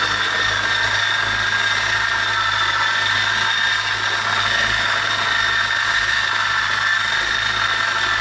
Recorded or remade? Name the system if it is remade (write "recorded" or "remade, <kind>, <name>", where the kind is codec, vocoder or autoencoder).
recorded